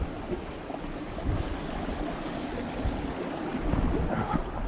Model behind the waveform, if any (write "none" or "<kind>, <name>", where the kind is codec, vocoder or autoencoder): none